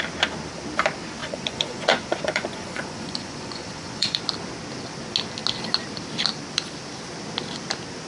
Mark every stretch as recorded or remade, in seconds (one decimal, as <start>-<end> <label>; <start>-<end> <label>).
0.0-1.2 recorded; 1.2-4.2 remade; 4.2-8.1 recorded